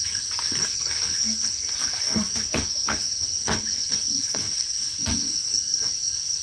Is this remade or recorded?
remade